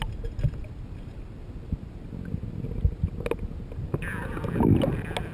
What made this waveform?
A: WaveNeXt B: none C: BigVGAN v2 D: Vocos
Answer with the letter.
B